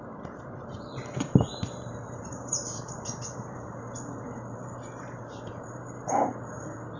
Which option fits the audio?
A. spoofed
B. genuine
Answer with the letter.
A